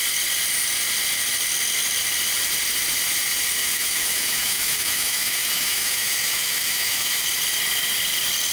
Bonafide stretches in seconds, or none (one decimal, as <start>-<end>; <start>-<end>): 0.0-3.6; 7.2-8.5